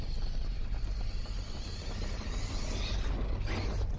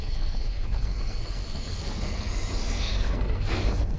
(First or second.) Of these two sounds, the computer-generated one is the second